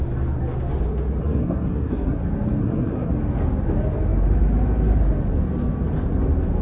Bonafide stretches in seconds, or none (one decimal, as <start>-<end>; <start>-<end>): 0.0-1.2; 2.2-2.6; 3.1-6.6